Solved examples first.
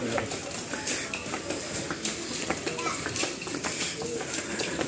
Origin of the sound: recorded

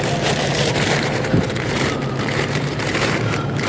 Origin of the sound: remade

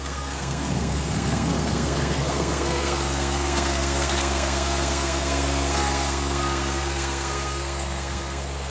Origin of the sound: remade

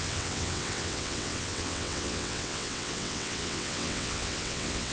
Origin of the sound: remade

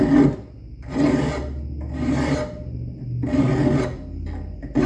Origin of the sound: recorded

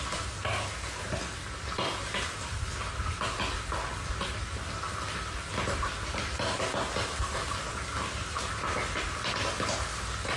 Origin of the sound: recorded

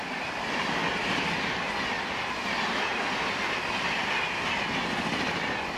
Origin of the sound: recorded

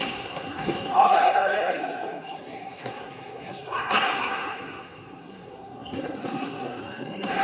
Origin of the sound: remade